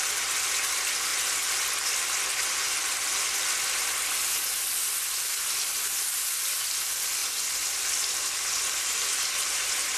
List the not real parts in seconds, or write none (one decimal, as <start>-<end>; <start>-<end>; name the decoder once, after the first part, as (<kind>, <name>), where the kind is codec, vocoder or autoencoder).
none